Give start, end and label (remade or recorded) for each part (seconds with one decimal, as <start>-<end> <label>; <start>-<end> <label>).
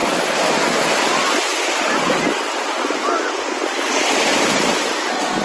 0.0-5.4 recorded